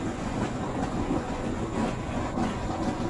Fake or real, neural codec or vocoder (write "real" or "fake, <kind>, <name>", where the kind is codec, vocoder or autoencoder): fake, vocoder, Vocos